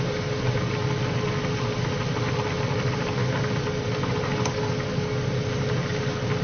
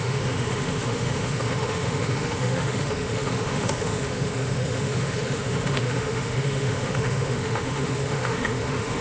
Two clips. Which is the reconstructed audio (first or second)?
second